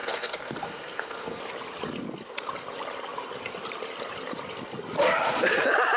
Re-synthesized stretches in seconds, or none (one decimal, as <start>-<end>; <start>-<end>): 0.0-1.4